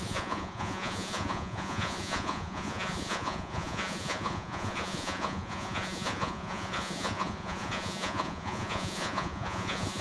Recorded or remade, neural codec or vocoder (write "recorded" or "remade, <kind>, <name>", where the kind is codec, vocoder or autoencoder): remade, vocoder, Vocos